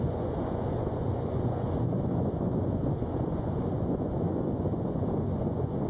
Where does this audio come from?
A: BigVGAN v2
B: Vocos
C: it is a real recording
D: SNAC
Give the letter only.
B